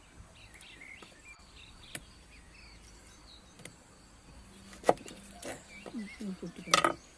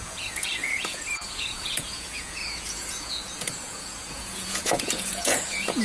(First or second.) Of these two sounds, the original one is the first